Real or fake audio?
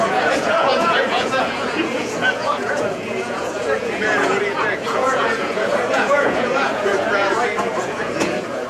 fake